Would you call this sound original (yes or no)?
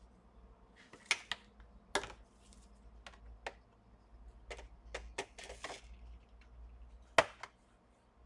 yes